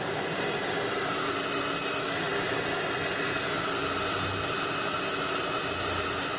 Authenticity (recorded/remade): recorded